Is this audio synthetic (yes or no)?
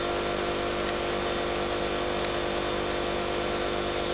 no